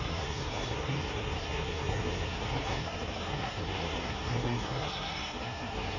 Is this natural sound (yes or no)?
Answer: no